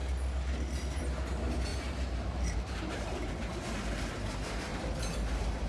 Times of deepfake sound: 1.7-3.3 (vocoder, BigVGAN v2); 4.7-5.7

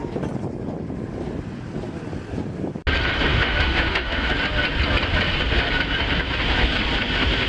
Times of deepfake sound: 3.3-4.3 (autoencoder, DAC-VAE)

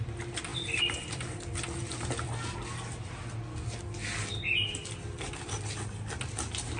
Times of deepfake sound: none

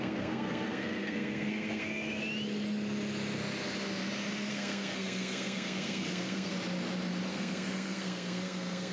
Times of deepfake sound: 0.0-2.2 (codec, SNAC); 4.5-6.5; 7.3-8.9

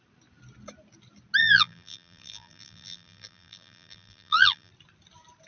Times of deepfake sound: 1.4-4.7 (vocoder, BigVGAN v2)

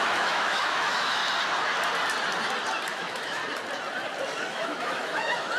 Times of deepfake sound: 0.0-1.2 (autoencoder, DAC-VAE); 2.9-3.4; 4.5-5.6